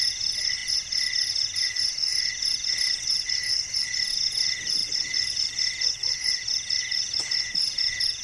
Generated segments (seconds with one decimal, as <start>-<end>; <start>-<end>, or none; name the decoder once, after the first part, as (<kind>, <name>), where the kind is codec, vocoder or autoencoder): none